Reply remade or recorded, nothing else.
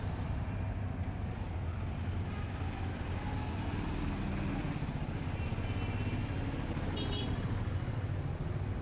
recorded